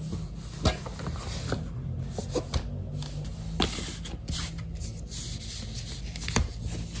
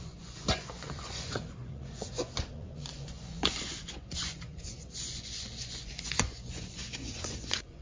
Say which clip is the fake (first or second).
second